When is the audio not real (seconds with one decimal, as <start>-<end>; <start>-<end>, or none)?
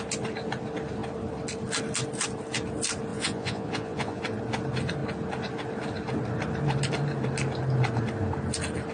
3.1-4.2